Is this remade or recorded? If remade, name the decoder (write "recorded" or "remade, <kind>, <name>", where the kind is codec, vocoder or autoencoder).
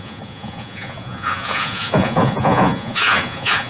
remade, vocoder, Vocos